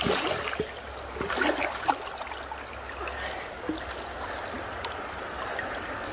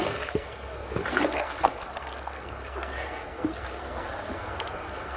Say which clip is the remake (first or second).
second